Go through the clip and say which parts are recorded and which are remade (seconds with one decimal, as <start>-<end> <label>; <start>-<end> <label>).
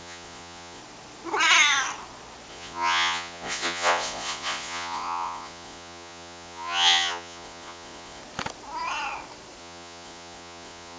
0.0-0.8 remade; 0.8-2.5 recorded; 2.5-8.2 remade; 8.2-9.6 recorded; 9.6-11.0 remade